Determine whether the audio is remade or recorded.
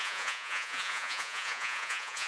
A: remade